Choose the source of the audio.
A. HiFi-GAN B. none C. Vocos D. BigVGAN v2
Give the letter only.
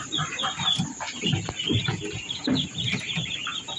D